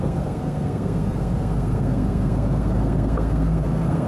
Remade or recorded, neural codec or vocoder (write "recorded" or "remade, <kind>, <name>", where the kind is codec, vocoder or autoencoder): remade, codec, SNAC